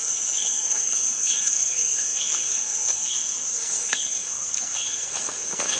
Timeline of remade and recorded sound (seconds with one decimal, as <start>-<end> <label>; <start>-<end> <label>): 0.0-5.8 remade